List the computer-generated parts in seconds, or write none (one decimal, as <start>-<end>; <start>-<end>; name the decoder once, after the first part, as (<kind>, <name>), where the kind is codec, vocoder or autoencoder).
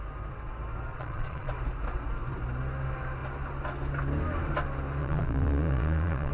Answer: 0.9-1.5 (vocoder, Vocos); 5.0-6.3